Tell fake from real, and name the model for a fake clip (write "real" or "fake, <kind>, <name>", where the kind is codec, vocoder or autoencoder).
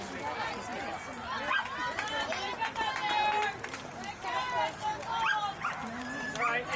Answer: real